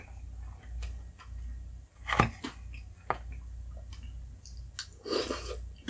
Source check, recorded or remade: recorded